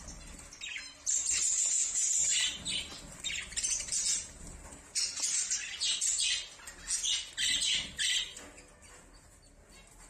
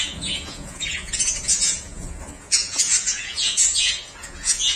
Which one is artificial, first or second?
second